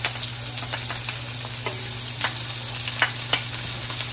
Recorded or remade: recorded